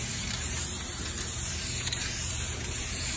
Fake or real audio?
fake